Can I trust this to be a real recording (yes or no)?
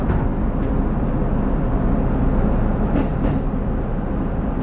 yes